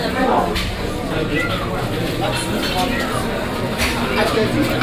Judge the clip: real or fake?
real